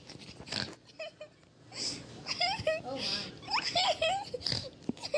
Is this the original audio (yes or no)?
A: yes